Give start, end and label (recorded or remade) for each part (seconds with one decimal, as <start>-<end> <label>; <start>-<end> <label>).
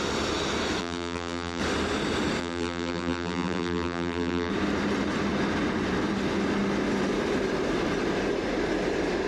0.0-0.8 recorded; 0.8-1.6 remade; 1.6-2.4 recorded; 2.4-4.5 remade; 4.5-9.3 recorded